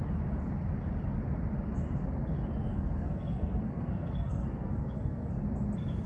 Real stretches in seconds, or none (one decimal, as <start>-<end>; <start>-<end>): 0.0-2.7; 5.3-6.1